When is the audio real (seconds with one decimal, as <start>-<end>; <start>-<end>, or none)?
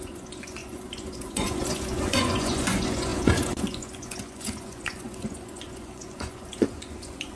none